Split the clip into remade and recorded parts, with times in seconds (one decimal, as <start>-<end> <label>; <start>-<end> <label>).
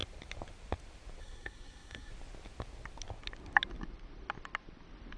0.0-1.2 recorded; 1.2-2.1 remade; 2.1-5.2 recorded